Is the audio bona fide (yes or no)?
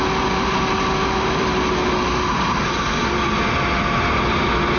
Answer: yes